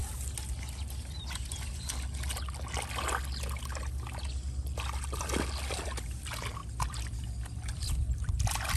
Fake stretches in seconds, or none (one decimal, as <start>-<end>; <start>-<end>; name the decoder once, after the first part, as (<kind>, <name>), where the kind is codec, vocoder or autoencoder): none